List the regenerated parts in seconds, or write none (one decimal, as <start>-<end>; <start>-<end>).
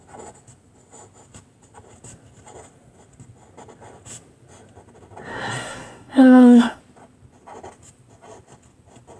5.3-6.8